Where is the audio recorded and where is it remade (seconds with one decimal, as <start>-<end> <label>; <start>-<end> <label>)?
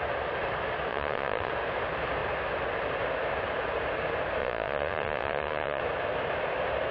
0.0-0.9 recorded; 0.9-1.5 remade; 1.5-4.4 recorded; 4.4-5.8 remade; 5.8-6.9 recorded